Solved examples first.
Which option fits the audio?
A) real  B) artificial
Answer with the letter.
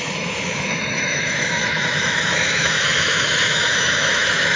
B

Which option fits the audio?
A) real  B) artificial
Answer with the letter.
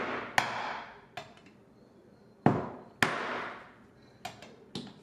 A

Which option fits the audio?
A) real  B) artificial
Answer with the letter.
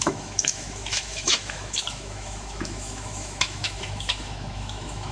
B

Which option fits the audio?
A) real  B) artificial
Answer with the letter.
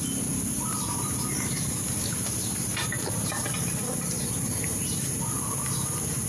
A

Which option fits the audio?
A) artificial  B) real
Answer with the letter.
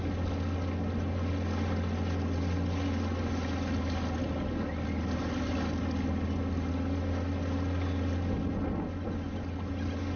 B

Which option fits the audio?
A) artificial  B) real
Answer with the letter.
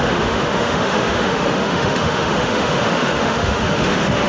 A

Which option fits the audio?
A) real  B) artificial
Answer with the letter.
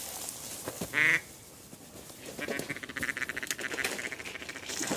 A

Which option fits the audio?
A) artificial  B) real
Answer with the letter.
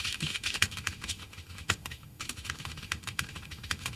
A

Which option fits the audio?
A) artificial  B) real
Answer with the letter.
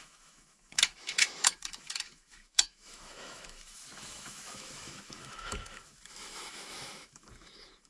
A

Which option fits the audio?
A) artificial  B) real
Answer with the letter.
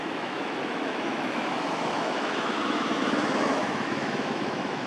A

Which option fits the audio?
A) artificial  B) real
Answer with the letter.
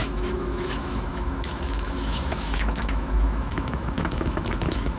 A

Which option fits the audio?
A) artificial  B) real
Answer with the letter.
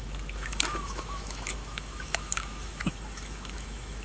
A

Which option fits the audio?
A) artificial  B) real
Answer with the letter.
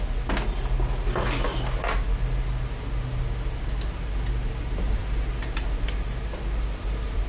B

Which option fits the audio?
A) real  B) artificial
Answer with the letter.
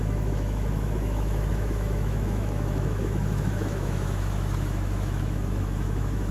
B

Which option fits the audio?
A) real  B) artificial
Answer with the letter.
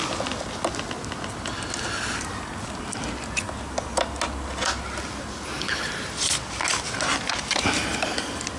A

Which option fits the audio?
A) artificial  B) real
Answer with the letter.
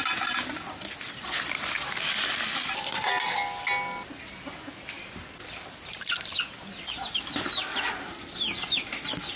B